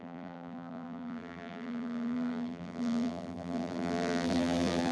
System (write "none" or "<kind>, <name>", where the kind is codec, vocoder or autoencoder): vocoder, BigVGAN v2